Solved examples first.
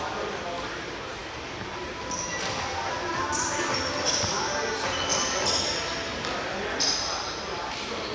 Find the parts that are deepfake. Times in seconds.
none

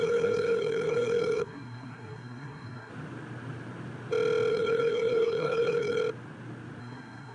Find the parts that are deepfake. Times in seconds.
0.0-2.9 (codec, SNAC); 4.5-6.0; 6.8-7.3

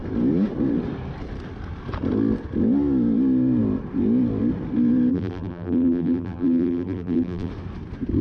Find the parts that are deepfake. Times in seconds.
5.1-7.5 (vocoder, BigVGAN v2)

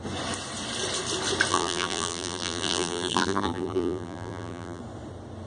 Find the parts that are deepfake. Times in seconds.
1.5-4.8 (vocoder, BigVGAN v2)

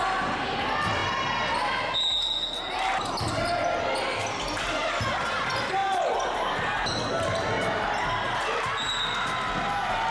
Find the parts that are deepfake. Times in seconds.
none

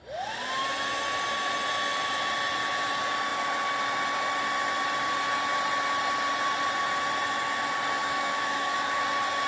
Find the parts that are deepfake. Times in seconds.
8.0-9.0 (autoencoder, DAC-VAE)

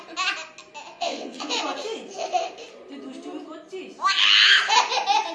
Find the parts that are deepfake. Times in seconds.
0.9-1.6 (vocoder, WaveNeXt)

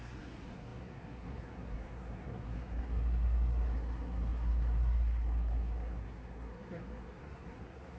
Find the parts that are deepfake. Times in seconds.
0.0-8.0 (codec, SNAC)